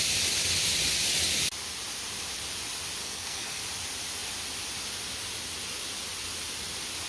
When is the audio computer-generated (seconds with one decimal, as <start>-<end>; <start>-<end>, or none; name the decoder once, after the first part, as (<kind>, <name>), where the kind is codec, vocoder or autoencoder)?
3.0-3.6 (codec, SNAC)